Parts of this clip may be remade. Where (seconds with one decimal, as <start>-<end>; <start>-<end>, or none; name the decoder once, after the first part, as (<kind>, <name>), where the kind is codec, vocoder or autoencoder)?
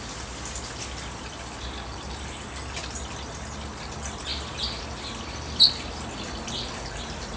none